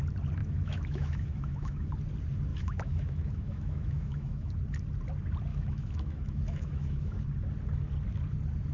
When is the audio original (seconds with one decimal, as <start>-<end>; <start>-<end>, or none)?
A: 0.0-0.4; 1.9-2.5; 4.5-5.5; 7.2-8.7